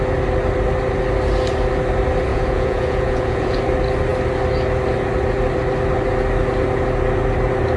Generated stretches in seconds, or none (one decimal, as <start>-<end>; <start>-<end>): 2.3-3.6